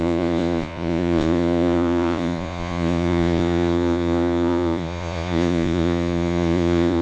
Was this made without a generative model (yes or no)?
no